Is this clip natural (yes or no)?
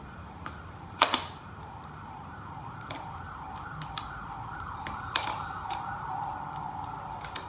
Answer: no